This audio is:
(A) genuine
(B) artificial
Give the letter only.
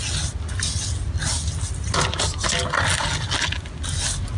A